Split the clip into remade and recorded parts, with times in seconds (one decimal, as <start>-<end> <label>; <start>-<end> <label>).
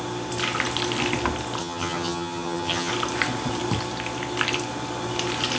0.0-1.6 recorded; 1.6-2.9 remade; 2.9-5.6 recorded